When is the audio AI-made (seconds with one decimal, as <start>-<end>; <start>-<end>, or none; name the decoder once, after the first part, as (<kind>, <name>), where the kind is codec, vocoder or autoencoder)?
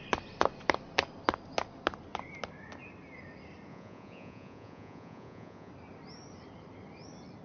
3.7-5.7 (vocoder, Vocos)